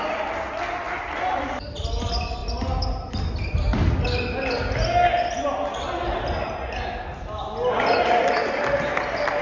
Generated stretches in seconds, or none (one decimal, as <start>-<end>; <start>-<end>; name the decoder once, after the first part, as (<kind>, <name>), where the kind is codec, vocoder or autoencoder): none